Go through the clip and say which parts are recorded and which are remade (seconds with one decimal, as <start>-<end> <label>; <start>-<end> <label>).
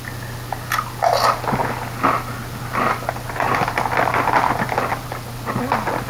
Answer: 0.0-6.1 recorded